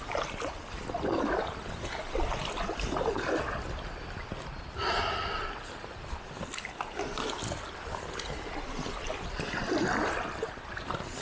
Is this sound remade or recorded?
recorded